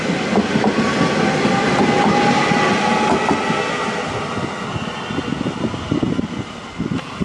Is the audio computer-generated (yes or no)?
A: no